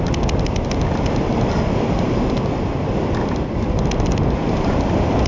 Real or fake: real